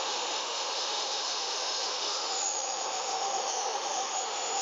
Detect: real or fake fake